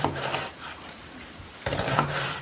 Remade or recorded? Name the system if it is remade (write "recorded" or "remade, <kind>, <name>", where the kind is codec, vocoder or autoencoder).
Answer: remade, vocoder, BigVGAN v2